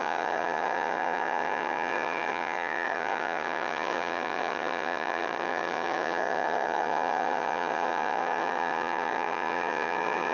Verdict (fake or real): fake